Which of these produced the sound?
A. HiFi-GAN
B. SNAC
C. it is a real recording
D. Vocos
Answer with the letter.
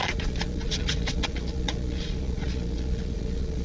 D